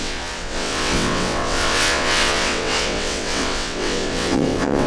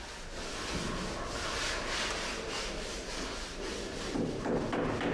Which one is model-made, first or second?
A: first